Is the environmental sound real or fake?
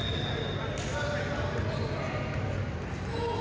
real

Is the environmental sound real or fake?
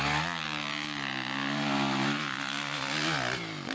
real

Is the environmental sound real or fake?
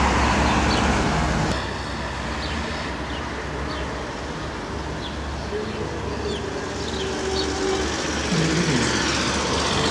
real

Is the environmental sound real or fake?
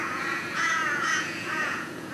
fake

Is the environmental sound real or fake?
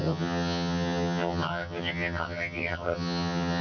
fake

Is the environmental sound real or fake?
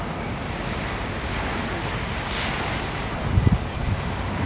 real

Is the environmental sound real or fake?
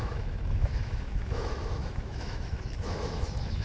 fake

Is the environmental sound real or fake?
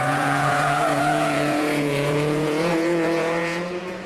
fake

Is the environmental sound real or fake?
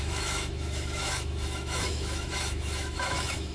fake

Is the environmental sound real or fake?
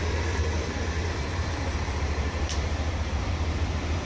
fake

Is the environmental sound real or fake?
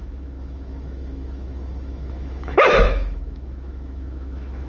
fake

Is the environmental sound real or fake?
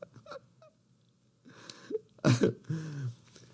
real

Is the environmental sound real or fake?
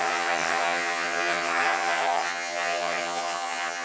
fake